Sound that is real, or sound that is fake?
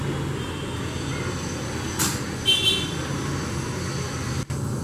real